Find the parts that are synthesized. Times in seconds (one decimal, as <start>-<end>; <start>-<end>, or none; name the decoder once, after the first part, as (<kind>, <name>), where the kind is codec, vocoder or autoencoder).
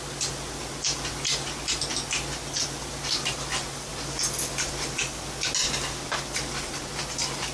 none